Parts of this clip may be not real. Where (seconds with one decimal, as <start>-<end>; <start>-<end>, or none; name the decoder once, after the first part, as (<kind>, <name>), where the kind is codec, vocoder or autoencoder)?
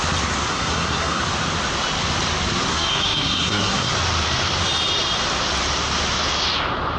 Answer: 0.5-1.2 (codec, SNAC); 2.7-3.9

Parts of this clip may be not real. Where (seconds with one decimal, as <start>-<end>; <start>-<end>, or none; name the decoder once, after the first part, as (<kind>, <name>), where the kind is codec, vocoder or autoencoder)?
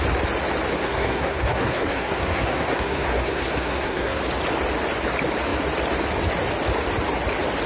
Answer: 0.7-4.2 (codec, SNAC)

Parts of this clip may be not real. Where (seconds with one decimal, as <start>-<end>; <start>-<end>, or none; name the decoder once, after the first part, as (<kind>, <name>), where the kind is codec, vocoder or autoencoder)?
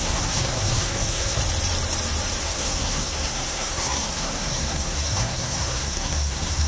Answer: 0.0-1.4 (codec, SNAC); 2.4-6.7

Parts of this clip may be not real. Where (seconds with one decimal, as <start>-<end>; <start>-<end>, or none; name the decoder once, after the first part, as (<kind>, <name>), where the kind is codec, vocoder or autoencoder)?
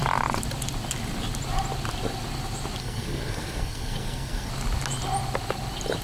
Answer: 2.8-4.5 (codec, SNAC)